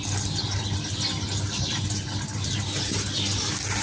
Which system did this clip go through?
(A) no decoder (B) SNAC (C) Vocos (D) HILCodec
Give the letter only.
A